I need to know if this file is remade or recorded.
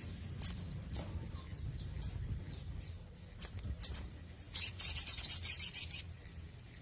recorded